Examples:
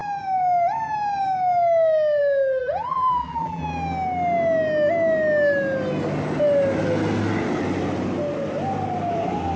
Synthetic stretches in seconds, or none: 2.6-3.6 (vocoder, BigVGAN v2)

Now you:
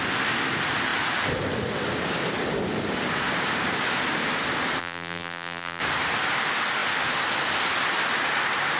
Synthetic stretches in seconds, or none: 4.8-5.8 (vocoder, BigVGAN v2)